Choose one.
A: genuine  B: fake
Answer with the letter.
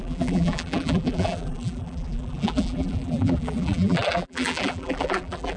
B